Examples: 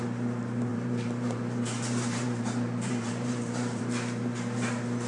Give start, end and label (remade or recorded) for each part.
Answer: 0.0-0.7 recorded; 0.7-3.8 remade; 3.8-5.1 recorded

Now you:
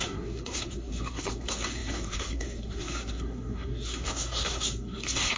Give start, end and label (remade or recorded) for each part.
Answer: 0.0-5.4 remade

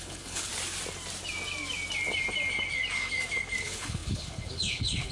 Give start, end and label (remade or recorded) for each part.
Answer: 0.0-0.5 remade; 0.5-3.6 recorded; 3.6-5.1 remade

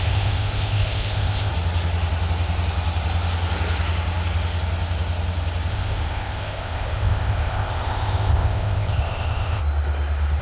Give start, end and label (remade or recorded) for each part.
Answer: 0.0-1.5 remade; 1.5-5.7 recorded; 5.7-9.6 remade; 9.6-10.4 recorded

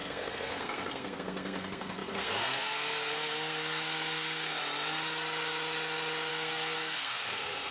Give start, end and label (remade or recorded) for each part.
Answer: 0.0-4.6 remade; 4.6-6.3 recorded; 6.3-7.7 remade

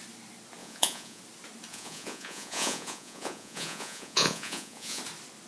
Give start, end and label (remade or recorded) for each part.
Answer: 0.0-0.6 recorded; 0.6-1.2 remade; 1.2-1.7 recorded; 1.7-5.0 remade; 5.0-5.5 recorded

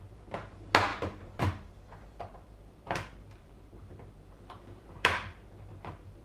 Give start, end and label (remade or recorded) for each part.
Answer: 0.0-6.2 remade

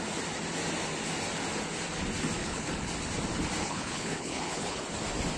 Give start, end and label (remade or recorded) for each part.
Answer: 0.0-2.4 recorded; 2.4-2.9 remade; 2.9-3.6 recorded; 3.6-4.8 remade; 4.8-5.4 recorded